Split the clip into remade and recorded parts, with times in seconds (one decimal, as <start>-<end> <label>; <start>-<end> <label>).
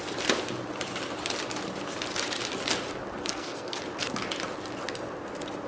0.0-3.2 recorded; 3.2-3.8 remade; 3.8-5.7 recorded